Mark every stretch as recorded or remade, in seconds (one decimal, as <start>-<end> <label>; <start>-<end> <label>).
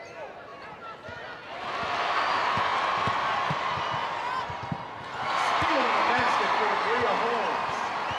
0.0-8.2 recorded